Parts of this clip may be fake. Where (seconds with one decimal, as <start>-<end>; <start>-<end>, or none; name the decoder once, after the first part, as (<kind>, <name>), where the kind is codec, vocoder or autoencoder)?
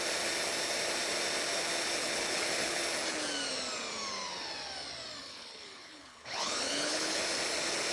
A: 2.0-2.8 (codec, HILCodec); 5.2-7.2